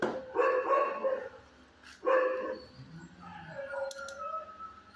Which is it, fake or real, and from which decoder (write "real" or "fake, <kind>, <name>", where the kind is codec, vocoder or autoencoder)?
real